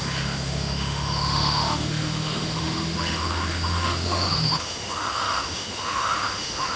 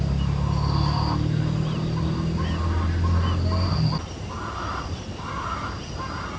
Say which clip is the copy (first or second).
first